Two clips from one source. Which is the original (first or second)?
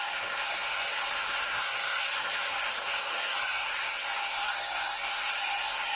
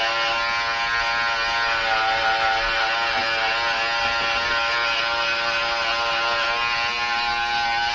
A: second